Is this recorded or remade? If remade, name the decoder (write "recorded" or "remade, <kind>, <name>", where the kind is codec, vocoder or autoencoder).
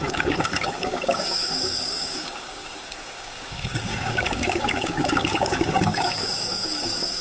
remade, codec, DAC